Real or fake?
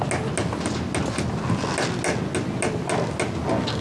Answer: real